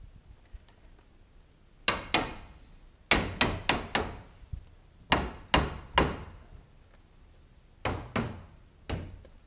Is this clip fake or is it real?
real